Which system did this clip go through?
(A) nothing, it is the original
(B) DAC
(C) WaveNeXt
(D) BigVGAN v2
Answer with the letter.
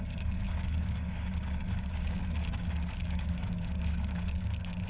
B